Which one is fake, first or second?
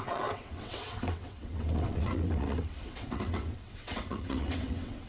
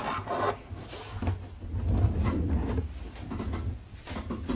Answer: first